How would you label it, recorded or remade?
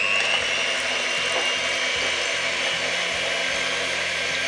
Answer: recorded